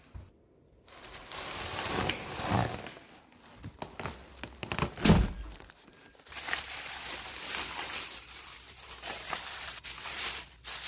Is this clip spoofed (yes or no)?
no